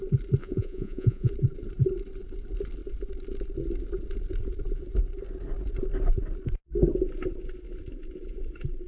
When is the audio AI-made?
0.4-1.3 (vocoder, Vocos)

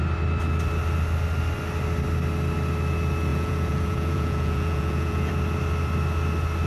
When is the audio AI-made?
3.3-5.3 (vocoder, Vocos)